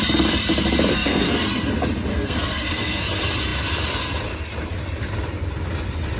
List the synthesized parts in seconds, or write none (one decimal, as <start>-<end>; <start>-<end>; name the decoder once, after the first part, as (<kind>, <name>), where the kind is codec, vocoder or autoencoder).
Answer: 0.9-1.7 (codec, SNAC); 2.1-3.0